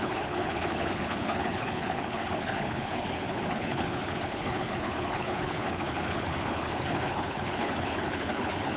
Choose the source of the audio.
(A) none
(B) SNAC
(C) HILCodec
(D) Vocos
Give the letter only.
C